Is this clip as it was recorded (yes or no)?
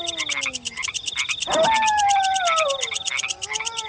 yes